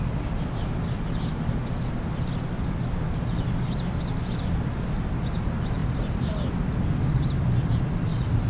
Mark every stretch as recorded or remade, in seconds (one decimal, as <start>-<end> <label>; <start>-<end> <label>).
0.0-8.5 recorded